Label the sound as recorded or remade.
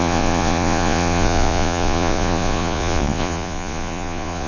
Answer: remade